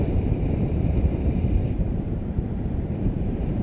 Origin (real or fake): fake